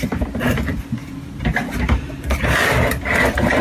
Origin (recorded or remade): remade